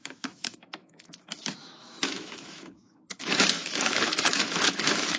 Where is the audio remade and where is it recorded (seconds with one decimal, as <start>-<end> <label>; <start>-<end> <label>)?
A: 0.0-5.2 remade